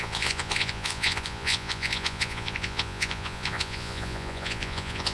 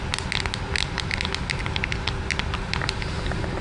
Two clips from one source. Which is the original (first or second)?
second